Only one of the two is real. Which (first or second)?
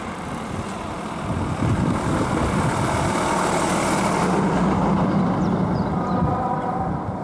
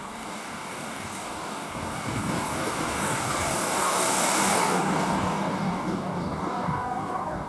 first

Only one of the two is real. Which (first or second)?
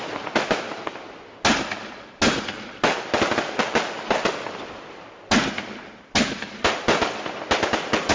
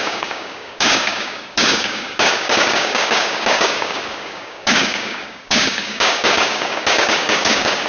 first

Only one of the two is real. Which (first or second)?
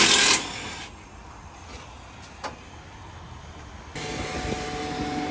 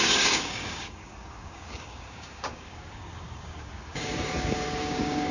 first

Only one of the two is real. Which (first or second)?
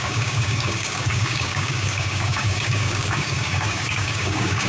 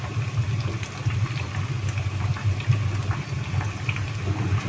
second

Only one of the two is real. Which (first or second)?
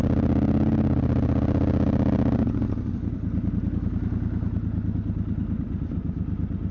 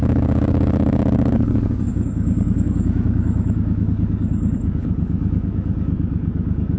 first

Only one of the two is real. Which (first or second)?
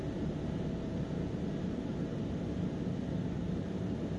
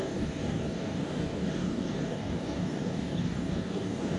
first